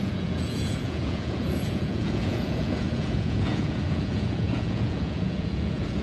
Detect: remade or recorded remade